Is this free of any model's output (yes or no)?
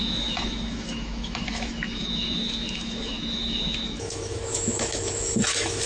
no